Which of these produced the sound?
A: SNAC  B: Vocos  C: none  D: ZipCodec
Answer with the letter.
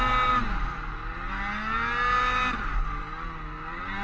C